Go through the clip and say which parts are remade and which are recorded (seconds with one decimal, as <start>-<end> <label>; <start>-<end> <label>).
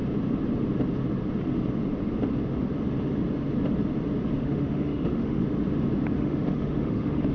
0.0-4.4 recorded; 4.4-5.4 remade; 5.4-6.2 recorded; 6.2-7.3 remade